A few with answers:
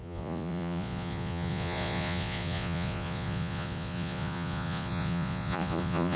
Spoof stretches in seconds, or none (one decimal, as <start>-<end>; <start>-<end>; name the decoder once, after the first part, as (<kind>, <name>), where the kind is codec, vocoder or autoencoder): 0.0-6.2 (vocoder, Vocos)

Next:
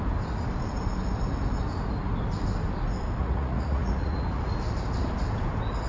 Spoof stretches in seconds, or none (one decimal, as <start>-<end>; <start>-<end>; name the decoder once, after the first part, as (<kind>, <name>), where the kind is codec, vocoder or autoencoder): 3.2-4.4 (vocoder, Vocos)

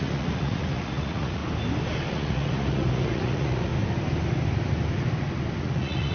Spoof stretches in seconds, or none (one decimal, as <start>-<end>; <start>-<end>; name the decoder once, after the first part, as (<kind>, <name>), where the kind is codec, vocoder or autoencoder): 0.0-1.4 (vocoder, Vocos); 2.1-3.7; 5.6-6.1

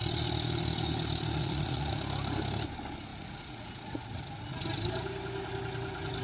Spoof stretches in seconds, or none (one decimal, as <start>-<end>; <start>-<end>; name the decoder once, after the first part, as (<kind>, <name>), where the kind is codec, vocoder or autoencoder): 1.4-1.9 (vocoder, Vocos); 3.1-4.2

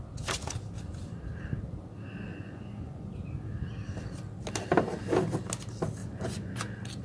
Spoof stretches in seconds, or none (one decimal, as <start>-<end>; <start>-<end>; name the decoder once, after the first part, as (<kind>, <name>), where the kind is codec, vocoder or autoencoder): 2.3-3.1 (vocoder, Vocos); 6.0-6.6